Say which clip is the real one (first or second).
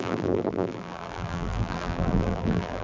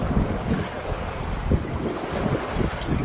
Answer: second